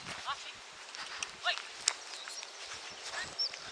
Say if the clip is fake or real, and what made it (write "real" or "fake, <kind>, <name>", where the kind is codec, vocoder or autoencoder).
fake, vocoder, BigVGAN v2